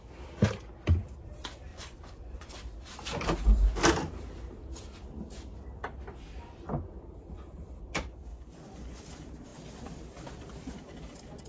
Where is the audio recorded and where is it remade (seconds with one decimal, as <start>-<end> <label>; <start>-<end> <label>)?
0.0-1.7 recorded; 1.7-2.5 remade; 2.5-8.3 recorded; 8.3-9.0 remade; 9.0-11.5 recorded